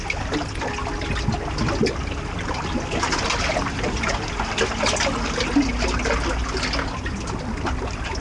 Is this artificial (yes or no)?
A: no